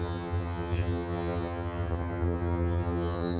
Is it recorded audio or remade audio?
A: remade